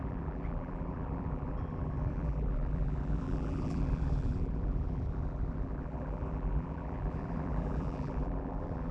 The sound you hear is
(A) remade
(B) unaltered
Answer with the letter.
A